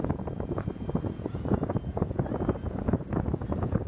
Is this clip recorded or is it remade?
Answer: remade